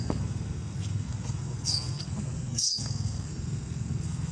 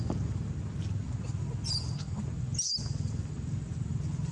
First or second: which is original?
second